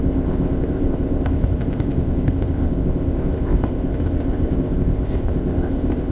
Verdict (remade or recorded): remade